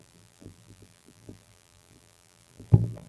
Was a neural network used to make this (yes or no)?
yes